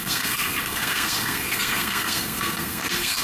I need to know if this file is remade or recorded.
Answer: remade